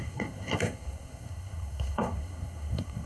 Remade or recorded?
remade